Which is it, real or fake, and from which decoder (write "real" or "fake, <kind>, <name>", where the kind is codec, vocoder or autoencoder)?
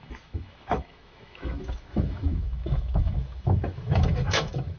fake, autoencoder, DAC-VAE